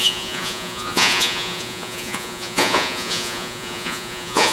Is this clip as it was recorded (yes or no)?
no